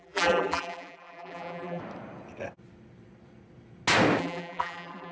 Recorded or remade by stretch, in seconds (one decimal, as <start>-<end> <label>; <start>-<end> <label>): 0.0-1.8 remade; 1.8-4.2 recorded; 4.2-5.1 remade